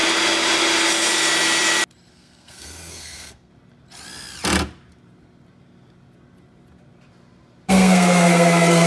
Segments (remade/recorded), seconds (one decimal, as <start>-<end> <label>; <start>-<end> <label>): 0.0-2.1 recorded; 2.1-3.5 remade; 3.5-7.7 recorded; 7.7-8.9 remade